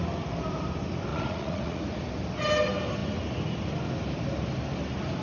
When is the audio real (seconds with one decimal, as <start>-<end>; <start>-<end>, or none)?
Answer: 0.0-1.1; 1.8-5.2